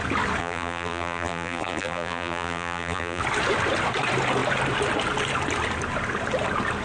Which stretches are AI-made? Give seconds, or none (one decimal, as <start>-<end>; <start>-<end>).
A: 0.4-3.2